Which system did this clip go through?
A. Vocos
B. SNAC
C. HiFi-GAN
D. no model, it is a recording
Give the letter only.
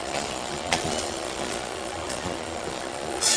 A